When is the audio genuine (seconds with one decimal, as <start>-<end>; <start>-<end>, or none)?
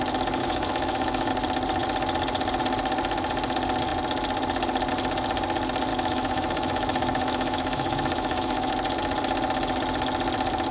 0.0-0.4; 1.3-5.9; 8.7-10.7